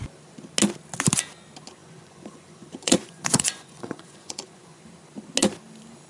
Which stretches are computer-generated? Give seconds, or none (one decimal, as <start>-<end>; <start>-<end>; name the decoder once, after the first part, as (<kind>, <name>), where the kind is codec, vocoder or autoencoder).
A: 1.8-4.8 (vocoder, Vocos)